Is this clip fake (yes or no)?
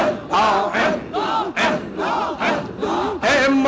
no